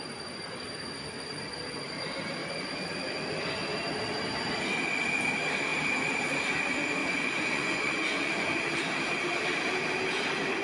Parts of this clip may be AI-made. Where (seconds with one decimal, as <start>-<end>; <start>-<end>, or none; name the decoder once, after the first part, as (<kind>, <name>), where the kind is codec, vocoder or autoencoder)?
7.0-8.6 (vocoder, Vocos)